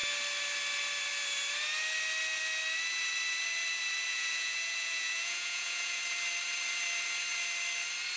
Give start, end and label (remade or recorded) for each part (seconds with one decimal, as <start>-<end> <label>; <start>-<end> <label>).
0.0-4.1 recorded; 4.1-6.0 remade; 6.0-8.2 recorded